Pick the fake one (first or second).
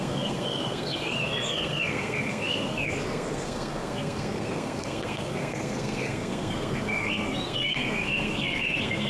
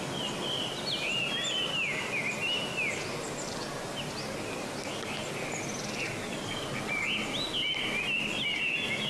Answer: first